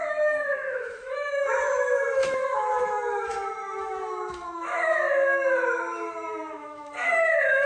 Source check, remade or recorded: remade